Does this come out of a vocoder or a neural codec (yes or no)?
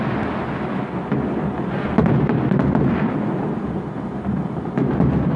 no